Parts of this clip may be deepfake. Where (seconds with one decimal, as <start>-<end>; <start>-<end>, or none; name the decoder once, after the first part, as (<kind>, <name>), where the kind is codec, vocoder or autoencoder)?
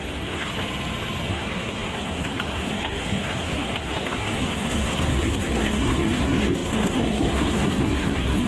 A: 0.0-0.5 (codec, SNAC); 1.3-8.5